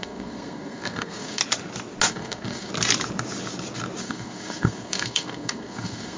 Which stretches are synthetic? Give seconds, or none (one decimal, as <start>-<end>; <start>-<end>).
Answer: 0.0-1.4; 2.1-2.7; 4.0-6.2